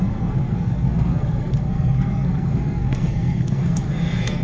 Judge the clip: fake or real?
fake